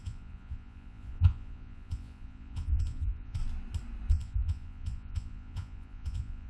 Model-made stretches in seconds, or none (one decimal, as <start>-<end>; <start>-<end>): 0.0-3.4; 4.1-6.5